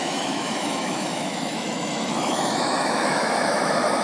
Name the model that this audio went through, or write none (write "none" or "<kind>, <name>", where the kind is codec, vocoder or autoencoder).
autoencoder, DAC-VAE